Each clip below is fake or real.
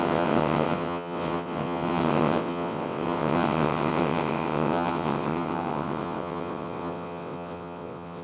fake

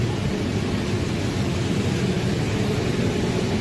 real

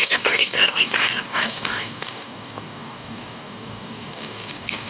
fake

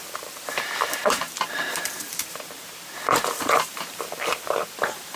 fake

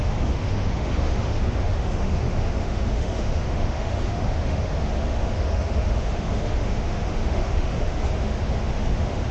fake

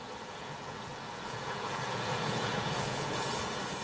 fake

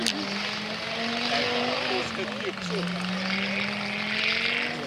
real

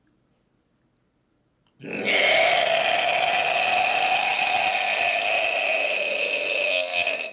real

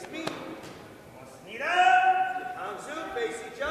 real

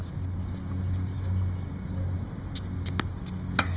real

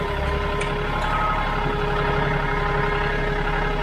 real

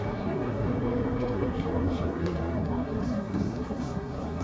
fake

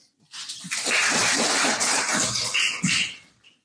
real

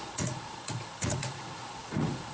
fake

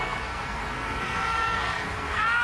fake